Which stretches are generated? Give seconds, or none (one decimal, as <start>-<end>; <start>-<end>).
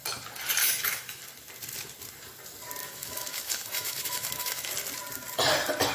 0.6-1.2; 2.8-4.7